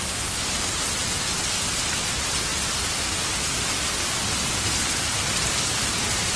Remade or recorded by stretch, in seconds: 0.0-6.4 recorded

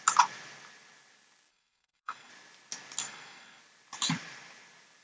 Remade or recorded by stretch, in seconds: 0.0-1.5 recorded; 1.5-2.3 remade; 2.3-3.0 recorded; 3.0-3.6 remade; 3.6-5.0 recorded

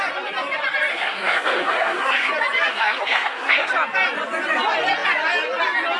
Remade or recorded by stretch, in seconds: 0.0-0.9 recorded; 0.9-2.3 remade; 2.3-2.7 recorded; 2.7-3.7 remade; 3.7-6.0 recorded

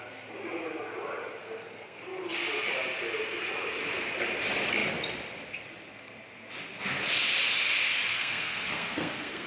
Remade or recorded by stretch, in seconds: 0.0-1.4 recorded; 1.4-2.2 remade; 2.2-8.1 recorded; 8.1-9.5 remade

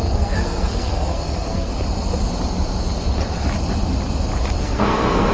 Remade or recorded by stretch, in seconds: 0.0-1.7 remade; 1.7-4.6 recorded; 4.6-5.3 remade

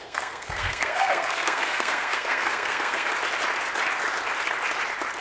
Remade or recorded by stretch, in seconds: 0.0-3.1 remade; 3.1-5.2 recorded

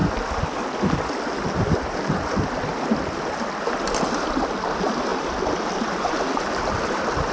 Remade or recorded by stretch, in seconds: 0.0-7.3 recorded

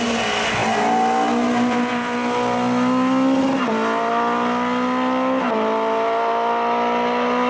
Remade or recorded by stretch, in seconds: 0.0-7.5 recorded